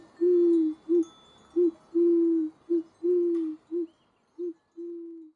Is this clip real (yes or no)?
yes